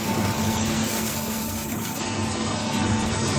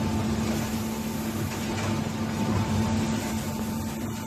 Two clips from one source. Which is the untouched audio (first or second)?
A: second